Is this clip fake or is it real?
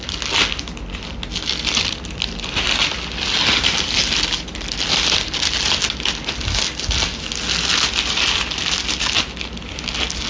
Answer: real